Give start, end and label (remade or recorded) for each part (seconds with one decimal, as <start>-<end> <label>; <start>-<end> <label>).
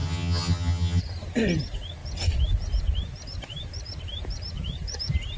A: 0.0-1.0 remade; 1.0-5.4 recorded